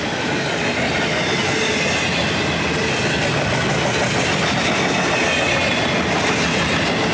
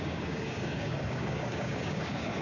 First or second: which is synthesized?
second